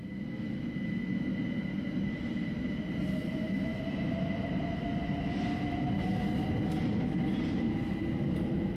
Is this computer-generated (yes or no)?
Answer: no